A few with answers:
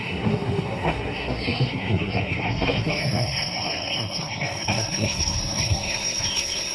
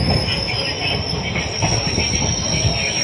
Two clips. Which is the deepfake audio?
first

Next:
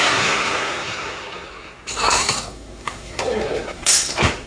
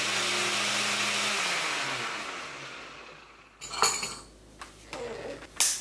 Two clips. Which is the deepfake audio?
first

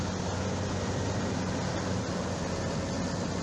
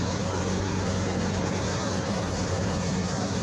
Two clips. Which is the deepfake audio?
second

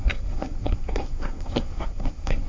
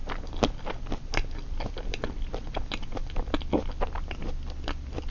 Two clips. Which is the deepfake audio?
first